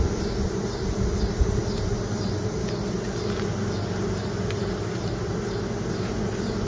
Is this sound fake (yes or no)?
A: no